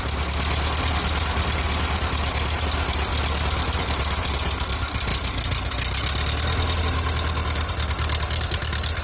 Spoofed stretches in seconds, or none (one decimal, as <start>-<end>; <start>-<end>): none